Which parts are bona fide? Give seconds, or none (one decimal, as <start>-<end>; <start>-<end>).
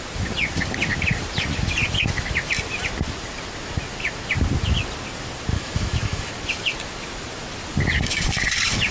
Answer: 0.0-5.5; 6.3-8.9